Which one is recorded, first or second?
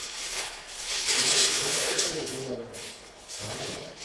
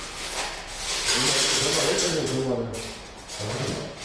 second